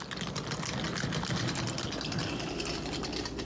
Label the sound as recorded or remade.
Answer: recorded